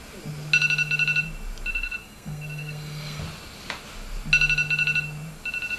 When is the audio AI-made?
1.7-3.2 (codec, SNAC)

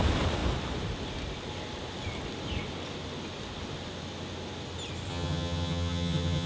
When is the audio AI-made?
5.1-6.5 (vocoder, HiFi-GAN)

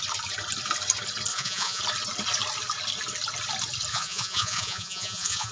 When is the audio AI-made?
1.3-1.8 (vocoder, Vocos); 3.9-5.5

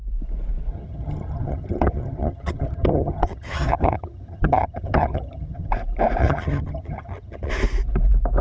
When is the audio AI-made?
0.7-5.7 (vocoder, HiFi-GAN); 6.2-7.5

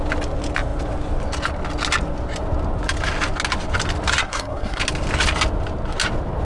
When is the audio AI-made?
4.2-4.8 (codec, SNAC)